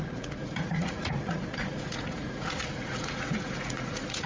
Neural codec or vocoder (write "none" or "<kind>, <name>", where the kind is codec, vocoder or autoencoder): vocoder, Vocos